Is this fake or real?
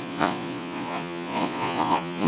fake